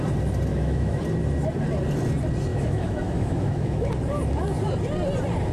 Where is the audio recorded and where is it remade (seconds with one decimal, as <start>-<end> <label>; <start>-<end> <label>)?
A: 0.0-0.5 recorded; 0.5-1.0 remade; 1.0-2.5 recorded; 2.5-3.9 remade; 3.9-5.5 recorded